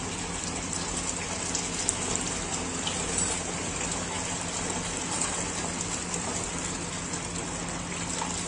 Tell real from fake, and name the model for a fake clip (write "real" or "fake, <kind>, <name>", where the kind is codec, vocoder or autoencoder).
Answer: real